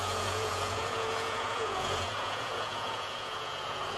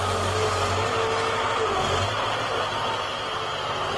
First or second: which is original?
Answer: second